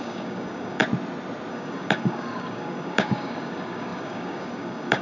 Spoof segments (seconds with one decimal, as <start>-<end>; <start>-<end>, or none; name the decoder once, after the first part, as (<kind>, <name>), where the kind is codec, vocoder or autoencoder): 0.0-0.8 (codec, DAC); 1.5-5.0